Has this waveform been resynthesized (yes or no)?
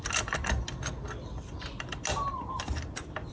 no